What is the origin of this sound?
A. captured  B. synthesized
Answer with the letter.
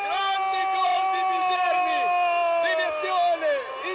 A